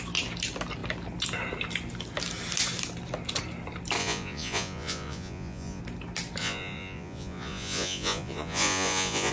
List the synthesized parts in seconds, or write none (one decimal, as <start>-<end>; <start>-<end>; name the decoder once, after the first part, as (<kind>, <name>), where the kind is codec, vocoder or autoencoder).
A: 4.0-5.8 (vocoder, Vocos); 6.4-9.3